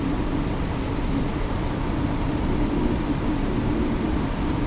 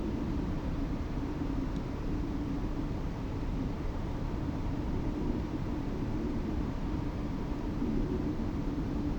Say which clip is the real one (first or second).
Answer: first